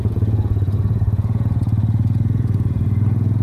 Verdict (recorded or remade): remade